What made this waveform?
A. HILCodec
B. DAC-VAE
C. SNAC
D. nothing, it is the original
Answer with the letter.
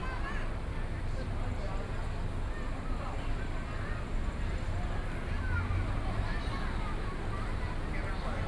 D